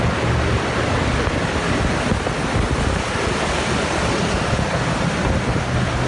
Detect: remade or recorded recorded